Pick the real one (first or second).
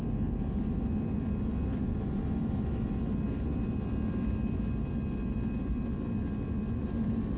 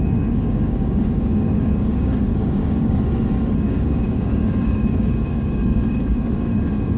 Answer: first